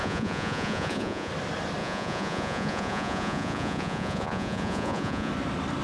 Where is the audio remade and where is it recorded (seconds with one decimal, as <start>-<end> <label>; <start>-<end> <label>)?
0.0-1.3 remade; 1.3-1.8 recorded; 1.8-5.3 remade; 5.3-5.8 recorded